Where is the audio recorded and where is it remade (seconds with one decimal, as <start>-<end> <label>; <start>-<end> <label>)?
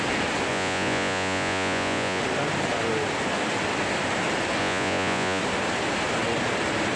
0.0-0.5 recorded; 0.5-2.2 remade; 2.2-4.6 recorded; 4.6-5.4 remade; 5.4-7.0 recorded